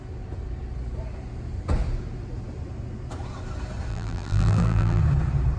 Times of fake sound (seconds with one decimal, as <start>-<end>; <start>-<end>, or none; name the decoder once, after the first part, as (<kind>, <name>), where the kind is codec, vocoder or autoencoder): 3.9-5.0 (vocoder, BigVGAN v2)